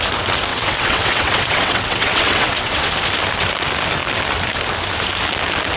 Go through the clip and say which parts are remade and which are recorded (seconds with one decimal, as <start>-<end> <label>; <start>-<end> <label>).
0.0-0.5 recorded; 0.5-2.9 remade; 2.9-5.8 recorded